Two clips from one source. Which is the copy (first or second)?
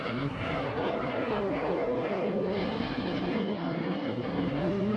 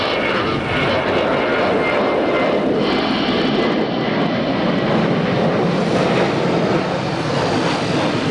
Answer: first